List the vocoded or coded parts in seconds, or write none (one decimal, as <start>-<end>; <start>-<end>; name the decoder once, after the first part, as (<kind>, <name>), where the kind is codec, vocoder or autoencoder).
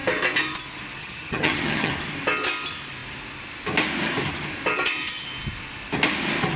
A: 1.0-1.9 (vocoder, HiFi-GAN)